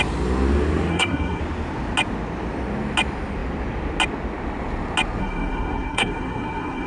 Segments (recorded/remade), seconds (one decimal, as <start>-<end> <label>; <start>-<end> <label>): 0.0-0.9 recorded; 0.9-1.4 remade; 1.4-5.2 recorded; 5.2-6.9 remade